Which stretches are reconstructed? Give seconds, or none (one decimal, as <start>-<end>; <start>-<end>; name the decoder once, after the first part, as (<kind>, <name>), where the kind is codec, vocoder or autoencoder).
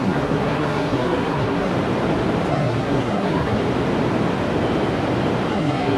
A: 0.0-1.7 (codec, SNAC); 2.5-3.6; 5.5-6.0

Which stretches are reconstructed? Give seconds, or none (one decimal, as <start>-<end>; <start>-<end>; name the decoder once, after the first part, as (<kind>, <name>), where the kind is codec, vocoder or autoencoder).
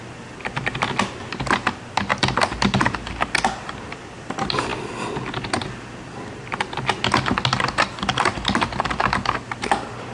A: none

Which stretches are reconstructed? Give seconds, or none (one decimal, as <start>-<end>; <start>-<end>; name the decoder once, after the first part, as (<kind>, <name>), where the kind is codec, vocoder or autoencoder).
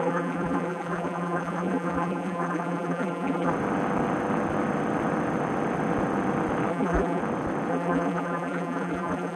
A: 0.0-3.5 (vocoder, BigVGAN v2); 6.7-7.2; 7.7-9.4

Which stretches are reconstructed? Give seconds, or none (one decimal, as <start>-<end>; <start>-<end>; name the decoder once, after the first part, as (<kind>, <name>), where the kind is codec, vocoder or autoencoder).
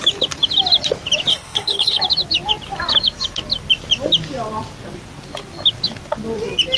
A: 1.3-2.0 (codec, HILCodec)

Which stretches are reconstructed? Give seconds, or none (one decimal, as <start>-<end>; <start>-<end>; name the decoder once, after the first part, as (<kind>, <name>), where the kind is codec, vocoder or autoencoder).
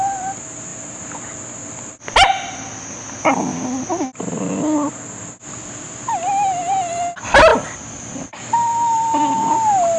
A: 7.5-9.5 (vocoder, BigVGAN v2)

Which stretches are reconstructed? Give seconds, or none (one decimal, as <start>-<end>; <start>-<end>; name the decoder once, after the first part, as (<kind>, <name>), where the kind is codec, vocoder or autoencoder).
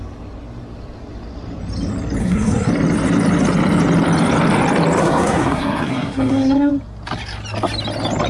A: 2.2-2.7 (codec, SNAC); 5.0-6.7